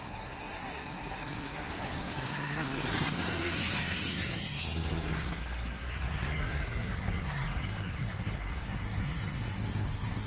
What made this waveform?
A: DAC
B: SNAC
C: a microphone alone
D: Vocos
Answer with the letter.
B